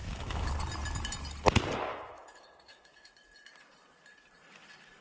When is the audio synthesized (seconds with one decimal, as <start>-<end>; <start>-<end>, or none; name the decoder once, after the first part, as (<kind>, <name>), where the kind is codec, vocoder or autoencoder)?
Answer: 0.0-0.5 (autoencoder, DAC-VAE); 1.9-3.1